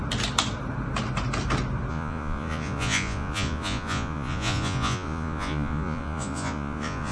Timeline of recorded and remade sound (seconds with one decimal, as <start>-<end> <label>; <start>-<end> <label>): 0.0-1.9 recorded; 1.9-7.1 remade